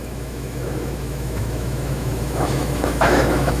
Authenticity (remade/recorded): remade